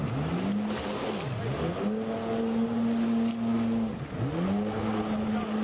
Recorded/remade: recorded